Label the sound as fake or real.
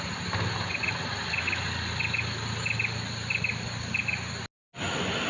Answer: real